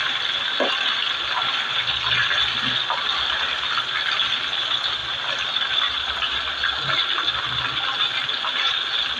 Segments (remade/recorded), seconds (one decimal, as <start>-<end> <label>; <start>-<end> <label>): 0.0-9.2 recorded